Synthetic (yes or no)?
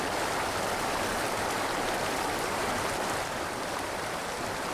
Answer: yes